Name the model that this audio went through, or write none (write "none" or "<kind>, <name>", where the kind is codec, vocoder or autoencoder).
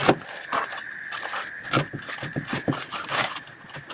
vocoder, BigVGAN v2